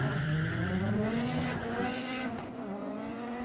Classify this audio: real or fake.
fake